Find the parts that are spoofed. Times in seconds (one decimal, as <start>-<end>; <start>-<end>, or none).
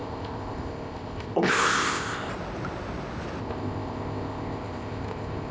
0.0-2.3; 3.4-5.5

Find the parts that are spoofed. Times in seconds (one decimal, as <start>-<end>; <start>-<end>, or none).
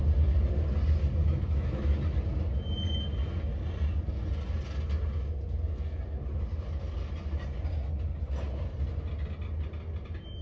1.2-1.9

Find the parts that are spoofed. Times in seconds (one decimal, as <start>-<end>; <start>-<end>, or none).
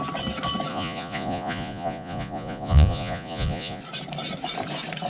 0.7-3.8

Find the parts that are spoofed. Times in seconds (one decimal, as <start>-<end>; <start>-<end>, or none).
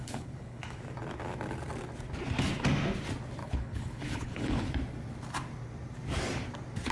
0.0-0.8; 3.4-4.7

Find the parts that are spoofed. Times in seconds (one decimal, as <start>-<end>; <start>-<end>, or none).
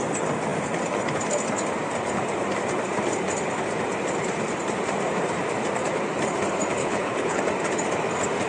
6.8-7.4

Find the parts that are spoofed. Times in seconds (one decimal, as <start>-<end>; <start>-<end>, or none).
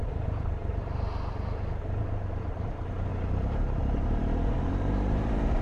0.0-0.7; 2.0-5.6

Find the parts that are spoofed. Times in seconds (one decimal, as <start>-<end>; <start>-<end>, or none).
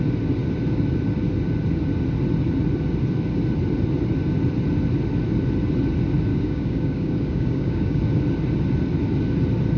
6.3-8.0